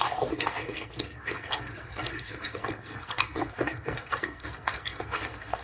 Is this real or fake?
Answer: fake